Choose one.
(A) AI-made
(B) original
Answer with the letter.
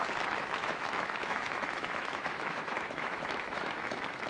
A